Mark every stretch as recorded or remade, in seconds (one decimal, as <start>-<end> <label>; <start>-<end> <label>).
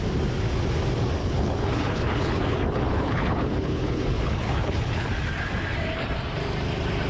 0.0-1.2 recorded; 1.2-5.1 remade; 5.1-7.1 recorded